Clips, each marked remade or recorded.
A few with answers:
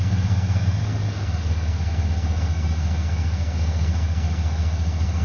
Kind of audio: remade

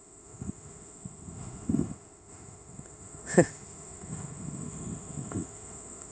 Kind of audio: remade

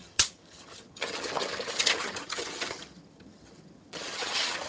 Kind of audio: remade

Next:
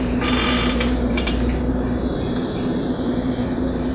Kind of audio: remade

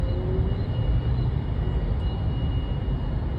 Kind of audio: recorded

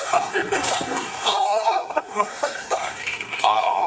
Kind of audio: remade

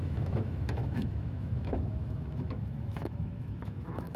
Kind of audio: remade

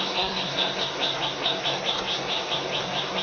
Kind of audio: remade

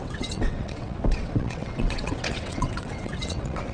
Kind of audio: remade